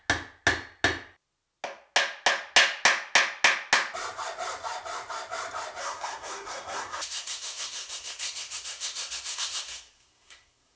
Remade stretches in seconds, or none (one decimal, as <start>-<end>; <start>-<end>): 5.8-10.8